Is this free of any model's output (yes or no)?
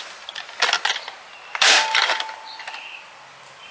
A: yes